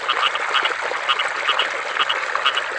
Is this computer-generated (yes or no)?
no